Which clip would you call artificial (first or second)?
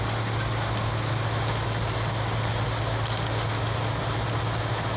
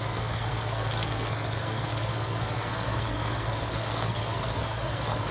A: second